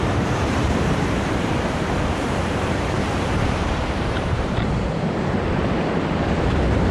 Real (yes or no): no